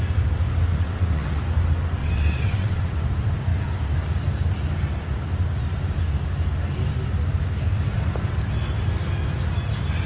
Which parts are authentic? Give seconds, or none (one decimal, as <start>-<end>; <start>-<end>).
0.0-0.7; 1.4-2.0; 3.0-10.1